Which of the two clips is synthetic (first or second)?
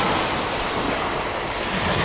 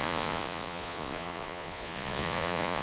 second